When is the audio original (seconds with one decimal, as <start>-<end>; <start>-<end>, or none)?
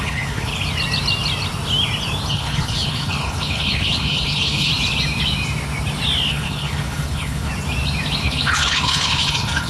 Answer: 0.5-2.3; 4.7-6.3; 7.5-8.2